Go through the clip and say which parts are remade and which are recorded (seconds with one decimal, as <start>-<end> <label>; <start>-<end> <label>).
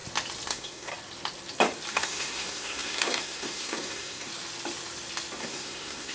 0.0-0.5 recorded; 0.5-0.9 remade; 0.9-1.9 recorded; 1.9-4.3 remade; 4.3-5.4 recorded; 5.4-6.1 remade